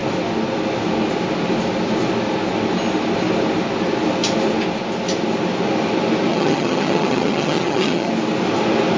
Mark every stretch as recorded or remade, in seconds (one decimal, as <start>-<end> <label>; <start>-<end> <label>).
0.0-6.3 recorded; 6.3-8.1 remade; 8.1-9.0 recorded